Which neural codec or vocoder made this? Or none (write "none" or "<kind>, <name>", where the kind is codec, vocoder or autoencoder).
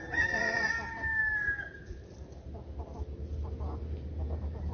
none